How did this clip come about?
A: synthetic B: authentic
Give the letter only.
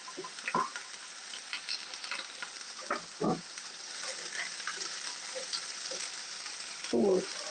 B